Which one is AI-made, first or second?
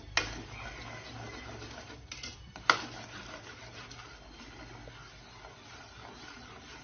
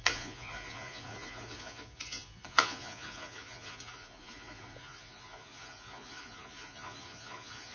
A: second